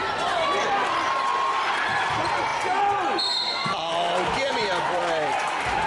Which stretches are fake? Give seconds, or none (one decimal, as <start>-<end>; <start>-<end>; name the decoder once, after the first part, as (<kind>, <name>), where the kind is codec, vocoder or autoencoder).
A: 2.1-5.9 (vocoder, BigVGAN v2)